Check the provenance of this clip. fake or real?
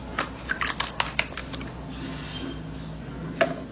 real